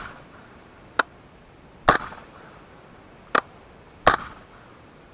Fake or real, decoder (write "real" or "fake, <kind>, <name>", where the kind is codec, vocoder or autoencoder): real